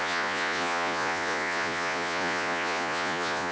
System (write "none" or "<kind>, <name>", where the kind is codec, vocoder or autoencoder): vocoder, Vocos